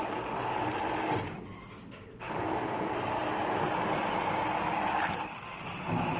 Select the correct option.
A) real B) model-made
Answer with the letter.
A